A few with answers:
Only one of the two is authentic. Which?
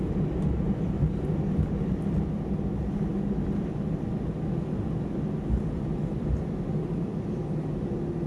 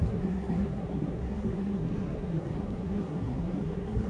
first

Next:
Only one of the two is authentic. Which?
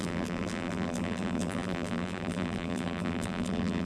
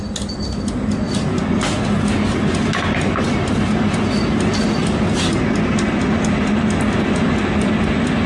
second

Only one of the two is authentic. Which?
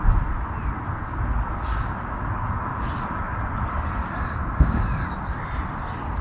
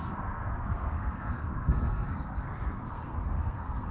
first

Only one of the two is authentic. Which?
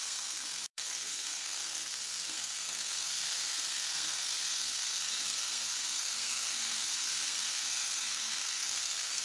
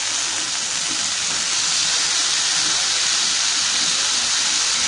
second